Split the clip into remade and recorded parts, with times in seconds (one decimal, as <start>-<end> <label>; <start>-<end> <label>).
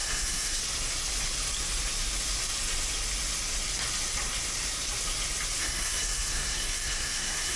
0.0-0.6 remade; 0.6-5.6 recorded; 5.6-7.6 remade